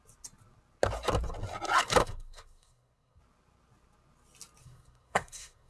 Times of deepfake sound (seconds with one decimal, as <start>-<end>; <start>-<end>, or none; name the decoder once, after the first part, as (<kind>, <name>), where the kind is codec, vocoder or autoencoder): 2.0-3.2 (codec, SNAC); 4.6-5.7